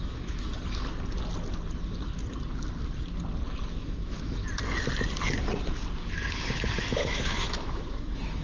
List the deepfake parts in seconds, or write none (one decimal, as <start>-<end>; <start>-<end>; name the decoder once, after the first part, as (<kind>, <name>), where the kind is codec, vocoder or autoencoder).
0.0-0.5 (autoencoder, DAC-VAE); 3.7-4.4; 6.3-8.4